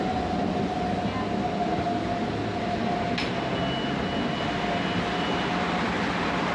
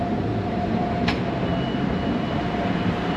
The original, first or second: first